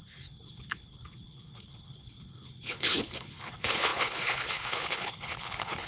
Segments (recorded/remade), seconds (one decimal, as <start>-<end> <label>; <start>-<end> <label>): 0.0-5.9 remade